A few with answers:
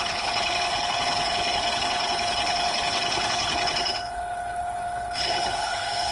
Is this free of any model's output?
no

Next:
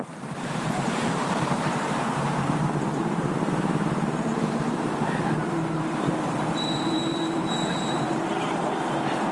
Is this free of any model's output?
no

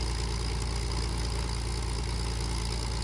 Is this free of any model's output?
yes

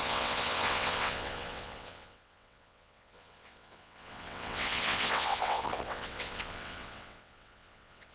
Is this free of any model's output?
no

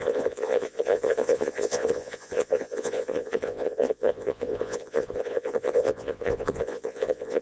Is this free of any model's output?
no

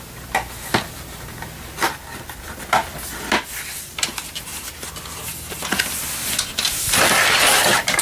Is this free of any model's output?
yes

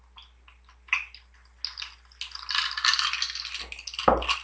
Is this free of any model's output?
yes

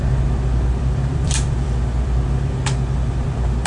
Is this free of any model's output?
no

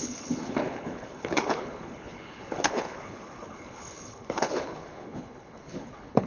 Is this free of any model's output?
no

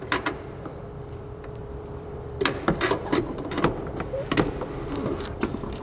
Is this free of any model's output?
no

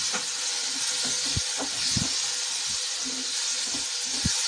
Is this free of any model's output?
yes